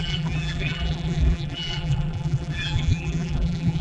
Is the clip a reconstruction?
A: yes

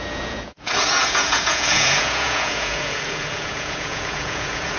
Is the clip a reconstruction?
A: yes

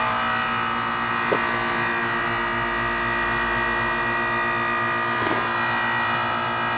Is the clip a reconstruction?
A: yes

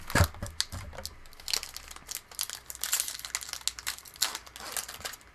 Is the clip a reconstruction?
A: no